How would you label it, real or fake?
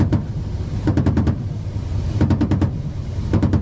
fake